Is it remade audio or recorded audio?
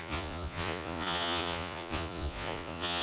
remade